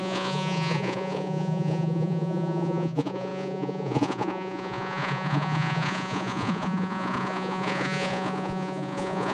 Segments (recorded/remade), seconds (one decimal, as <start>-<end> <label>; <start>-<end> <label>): 0.0-9.3 remade